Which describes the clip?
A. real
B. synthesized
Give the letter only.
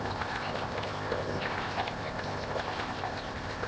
B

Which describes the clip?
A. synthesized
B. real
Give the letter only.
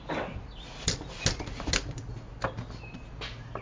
B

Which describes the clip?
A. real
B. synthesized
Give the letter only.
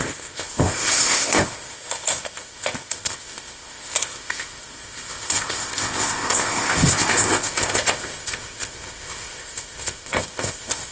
B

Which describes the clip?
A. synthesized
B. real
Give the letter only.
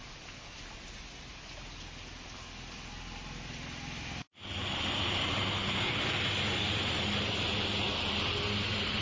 B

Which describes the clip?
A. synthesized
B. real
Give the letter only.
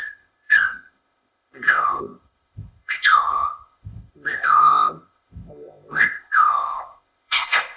A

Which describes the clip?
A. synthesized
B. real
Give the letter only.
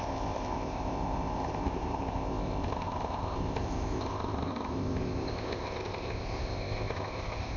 A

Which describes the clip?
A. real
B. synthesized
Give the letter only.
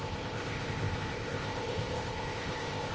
B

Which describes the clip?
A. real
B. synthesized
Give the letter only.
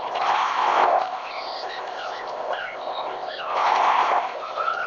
B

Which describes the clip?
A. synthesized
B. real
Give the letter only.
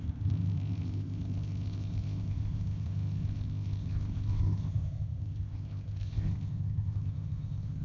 A